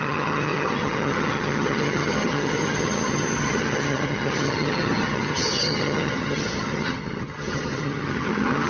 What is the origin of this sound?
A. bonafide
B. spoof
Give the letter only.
B